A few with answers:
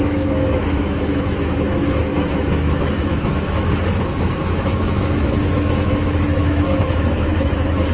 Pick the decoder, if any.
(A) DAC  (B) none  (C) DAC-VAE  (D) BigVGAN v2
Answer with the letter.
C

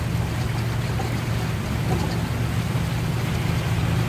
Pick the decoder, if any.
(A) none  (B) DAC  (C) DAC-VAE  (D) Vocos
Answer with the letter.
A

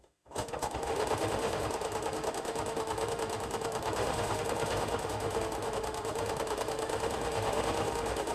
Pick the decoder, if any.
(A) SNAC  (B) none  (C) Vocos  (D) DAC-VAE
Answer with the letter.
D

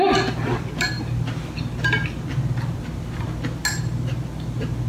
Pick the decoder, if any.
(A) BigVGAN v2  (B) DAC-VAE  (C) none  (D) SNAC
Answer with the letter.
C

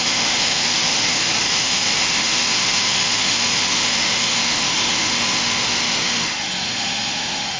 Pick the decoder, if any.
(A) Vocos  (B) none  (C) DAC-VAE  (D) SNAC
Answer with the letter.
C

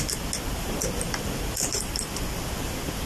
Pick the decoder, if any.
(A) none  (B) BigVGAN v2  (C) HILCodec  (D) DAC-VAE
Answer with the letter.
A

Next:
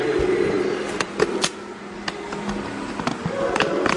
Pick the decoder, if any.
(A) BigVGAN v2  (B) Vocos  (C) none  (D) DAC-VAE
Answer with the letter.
C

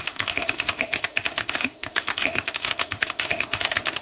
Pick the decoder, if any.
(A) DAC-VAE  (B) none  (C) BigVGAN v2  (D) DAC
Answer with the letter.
A